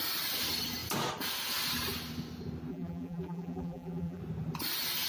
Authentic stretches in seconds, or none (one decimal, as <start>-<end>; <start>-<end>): 0.0-2.7; 4.2-5.1